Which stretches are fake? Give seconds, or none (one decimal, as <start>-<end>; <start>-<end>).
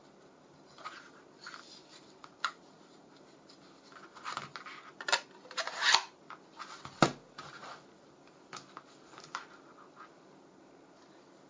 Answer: 2.2-3.1